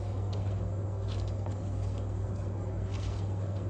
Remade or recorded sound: remade